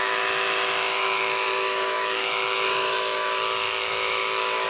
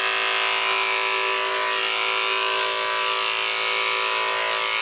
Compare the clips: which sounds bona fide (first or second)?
second